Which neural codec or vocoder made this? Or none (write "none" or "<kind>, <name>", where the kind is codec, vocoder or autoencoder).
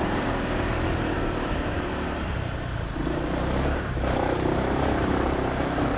vocoder, BigVGAN v2